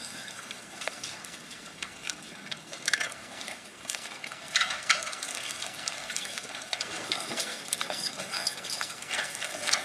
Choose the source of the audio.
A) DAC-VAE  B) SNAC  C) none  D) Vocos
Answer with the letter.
B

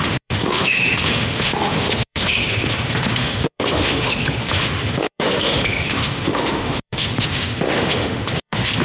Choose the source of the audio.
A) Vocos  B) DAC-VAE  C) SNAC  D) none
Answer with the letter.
B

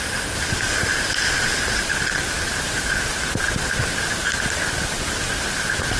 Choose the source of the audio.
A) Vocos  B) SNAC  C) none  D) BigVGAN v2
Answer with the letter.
C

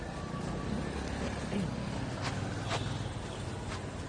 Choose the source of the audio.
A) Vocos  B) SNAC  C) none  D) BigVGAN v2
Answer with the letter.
C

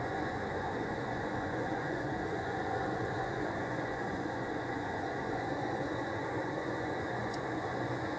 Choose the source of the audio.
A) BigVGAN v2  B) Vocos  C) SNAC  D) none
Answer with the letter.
B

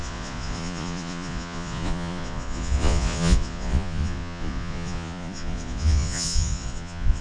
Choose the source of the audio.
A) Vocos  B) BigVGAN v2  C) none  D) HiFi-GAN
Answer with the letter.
A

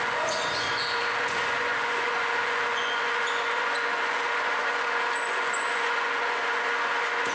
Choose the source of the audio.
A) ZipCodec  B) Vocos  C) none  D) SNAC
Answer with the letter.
B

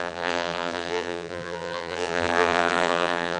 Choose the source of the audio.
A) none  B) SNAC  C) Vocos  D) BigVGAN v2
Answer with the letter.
D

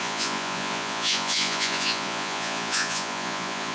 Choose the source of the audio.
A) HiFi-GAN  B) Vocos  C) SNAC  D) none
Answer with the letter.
B